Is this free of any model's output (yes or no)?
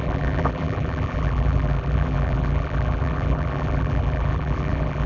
no